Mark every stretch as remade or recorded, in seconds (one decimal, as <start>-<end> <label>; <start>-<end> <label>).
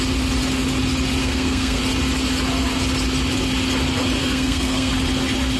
0.0-1.2 recorded; 1.2-1.8 remade; 1.8-4.2 recorded; 4.2-4.9 remade; 4.9-5.6 recorded